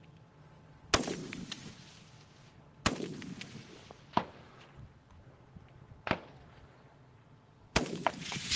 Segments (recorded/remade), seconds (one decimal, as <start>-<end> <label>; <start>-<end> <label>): 0.0-6.9 recorded; 6.9-8.6 remade